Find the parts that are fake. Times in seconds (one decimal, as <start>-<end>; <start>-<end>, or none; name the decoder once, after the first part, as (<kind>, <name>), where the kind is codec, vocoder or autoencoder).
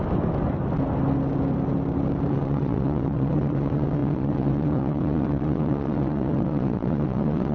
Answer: 2.3-7.5 (vocoder, WaveNeXt)